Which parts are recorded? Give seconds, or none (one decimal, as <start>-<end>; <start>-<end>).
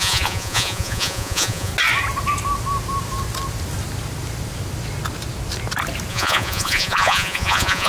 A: 1.7-6.1